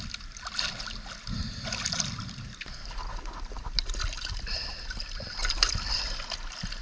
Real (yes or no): yes